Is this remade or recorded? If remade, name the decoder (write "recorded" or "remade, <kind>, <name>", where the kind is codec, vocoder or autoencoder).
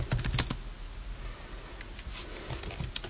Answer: recorded